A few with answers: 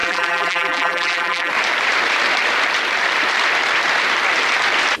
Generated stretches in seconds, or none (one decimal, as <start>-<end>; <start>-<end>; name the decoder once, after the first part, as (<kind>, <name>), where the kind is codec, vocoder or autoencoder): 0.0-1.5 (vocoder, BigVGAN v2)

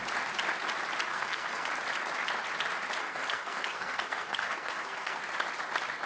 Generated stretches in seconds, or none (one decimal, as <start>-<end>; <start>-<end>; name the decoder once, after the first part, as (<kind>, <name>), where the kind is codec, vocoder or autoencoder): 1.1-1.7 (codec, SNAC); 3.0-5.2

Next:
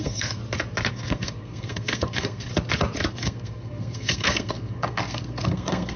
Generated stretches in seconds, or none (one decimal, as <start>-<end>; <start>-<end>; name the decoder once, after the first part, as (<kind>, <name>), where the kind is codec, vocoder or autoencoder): 0.0-0.4 (codec, SNAC); 0.9-2.5; 3.1-6.0